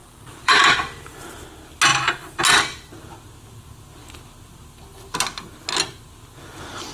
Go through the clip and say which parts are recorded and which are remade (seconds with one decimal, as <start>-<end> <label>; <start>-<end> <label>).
0.0-1.5 remade; 1.5-1.9 recorded; 1.9-2.4 remade; 2.4-6.9 recorded

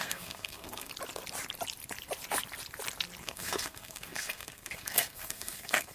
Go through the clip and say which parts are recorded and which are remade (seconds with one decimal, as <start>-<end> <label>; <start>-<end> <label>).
0.0-0.9 remade; 0.9-3.2 recorded; 3.2-5.9 remade

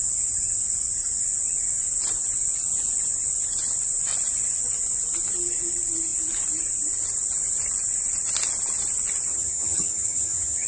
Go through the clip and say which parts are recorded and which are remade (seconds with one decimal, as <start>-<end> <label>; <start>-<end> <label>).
0.0-9.3 recorded; 9.3-10.7 remade